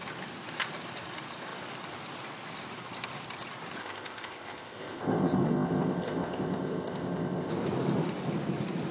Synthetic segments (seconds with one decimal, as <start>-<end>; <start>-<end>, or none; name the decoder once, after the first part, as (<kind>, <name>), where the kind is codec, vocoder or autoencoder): 3.8-7.5 (codec, ZipCodec)